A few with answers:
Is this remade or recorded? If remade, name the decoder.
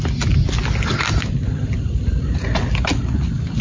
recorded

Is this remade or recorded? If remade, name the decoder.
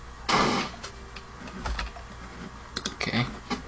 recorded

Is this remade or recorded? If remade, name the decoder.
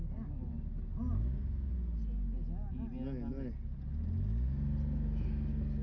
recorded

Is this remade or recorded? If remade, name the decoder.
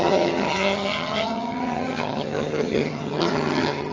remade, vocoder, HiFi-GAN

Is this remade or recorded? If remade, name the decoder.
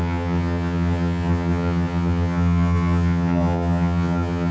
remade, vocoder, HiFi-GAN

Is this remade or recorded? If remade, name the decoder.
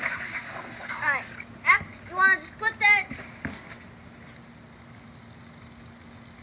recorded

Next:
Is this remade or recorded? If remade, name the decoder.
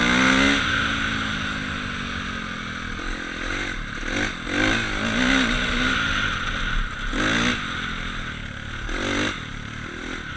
recorded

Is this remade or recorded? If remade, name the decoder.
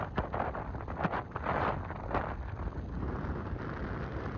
recorded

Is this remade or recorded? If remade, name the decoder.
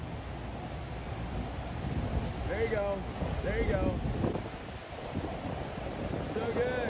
recorded